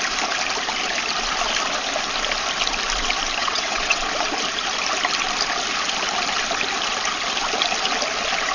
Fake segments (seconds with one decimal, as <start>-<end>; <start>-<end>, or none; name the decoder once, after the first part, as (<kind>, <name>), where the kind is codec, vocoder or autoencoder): 3.4-4.0 (vocoder, WaveNeXt)